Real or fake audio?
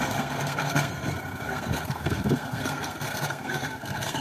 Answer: fake